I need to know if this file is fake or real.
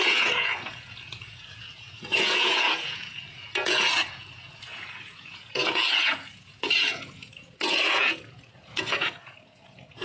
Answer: fake